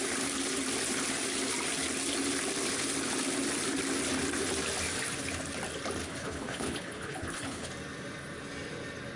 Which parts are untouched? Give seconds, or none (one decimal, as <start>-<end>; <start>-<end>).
0.0-6.0; 7.7-9.2